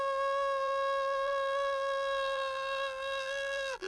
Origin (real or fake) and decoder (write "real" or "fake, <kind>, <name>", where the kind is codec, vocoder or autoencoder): fake, vocoder, BigVGAN v2